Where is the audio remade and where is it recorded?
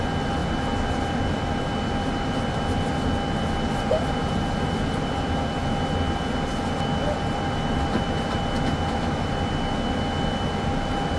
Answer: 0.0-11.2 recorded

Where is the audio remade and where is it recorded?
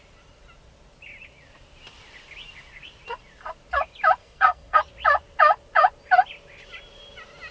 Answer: 0.0-4.2 recorded; 4.2-4.8 remade; 4.8-7.5 recorded